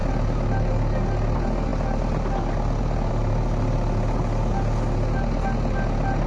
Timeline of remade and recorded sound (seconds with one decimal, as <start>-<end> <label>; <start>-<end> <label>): 0.0-6.3 recorded